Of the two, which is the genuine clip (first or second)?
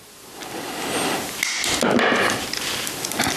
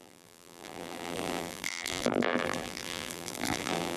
first